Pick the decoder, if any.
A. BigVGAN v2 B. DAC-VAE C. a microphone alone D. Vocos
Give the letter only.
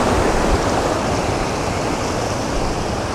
C